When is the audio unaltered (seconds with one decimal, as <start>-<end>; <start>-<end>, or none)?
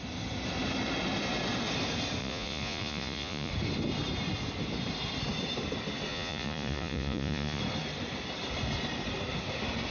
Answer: 0.0-2.2; 3.5-6.1; 7.6-9.9